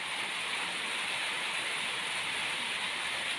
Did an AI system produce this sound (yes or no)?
no